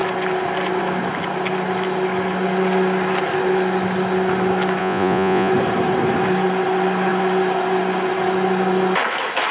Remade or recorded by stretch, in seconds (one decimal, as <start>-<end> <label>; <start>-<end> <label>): 0.0-4.8 recorded; 4.8-5.5 remade; 5.5-9.5 recorded